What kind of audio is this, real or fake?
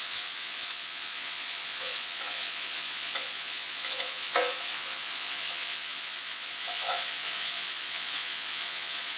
fake